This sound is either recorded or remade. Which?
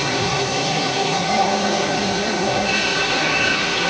remade